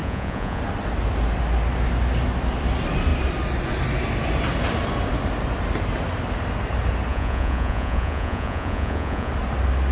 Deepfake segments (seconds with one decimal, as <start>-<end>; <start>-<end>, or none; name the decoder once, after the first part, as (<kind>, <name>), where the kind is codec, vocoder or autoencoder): 0.0-0.6 (vocoder, Vocos); 7.1-9.3